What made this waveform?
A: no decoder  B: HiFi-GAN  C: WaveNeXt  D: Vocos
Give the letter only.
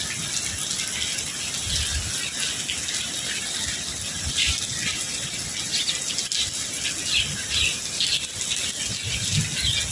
A